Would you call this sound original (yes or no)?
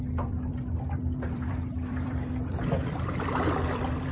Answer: no